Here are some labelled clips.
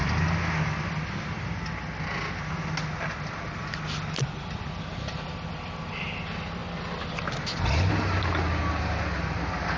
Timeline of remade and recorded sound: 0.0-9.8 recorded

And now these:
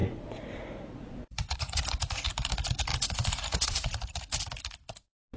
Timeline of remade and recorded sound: 0.0-2.3 remade; 2.3-2.9 recorded; 2.9-4.4 remade; 4.4-5.4 recorded

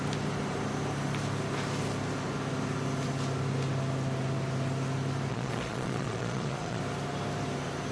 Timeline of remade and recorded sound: 0.0-5.3 recorded; 5.3-6.8 remade; 6.8-7.9 recorded

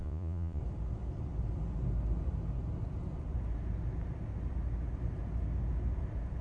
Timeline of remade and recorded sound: 0.0-0.6 remade; 0.6-6.4 recorded

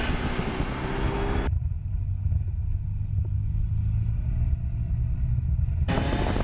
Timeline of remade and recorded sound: 0.0-6.4 recorded